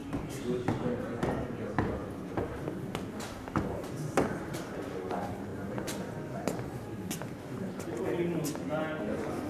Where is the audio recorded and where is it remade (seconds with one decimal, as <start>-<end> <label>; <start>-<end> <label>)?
0.0-9.5 recorded